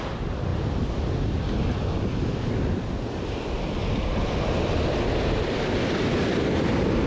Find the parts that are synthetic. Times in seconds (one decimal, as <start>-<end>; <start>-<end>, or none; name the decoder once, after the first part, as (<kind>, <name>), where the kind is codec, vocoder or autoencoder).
none